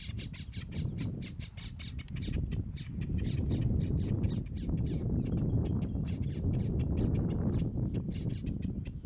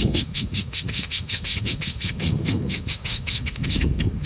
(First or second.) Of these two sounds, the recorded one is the first